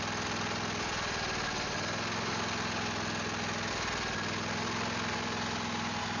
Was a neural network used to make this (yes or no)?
no